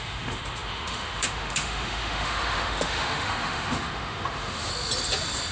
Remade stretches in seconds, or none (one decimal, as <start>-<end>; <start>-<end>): 0.0-4.7